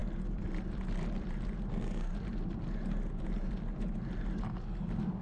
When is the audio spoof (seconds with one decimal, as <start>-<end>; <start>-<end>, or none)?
1.7-2.1